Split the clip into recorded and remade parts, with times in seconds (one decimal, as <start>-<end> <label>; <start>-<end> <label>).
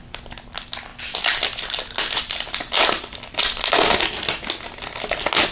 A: 0.0-5.5 recorded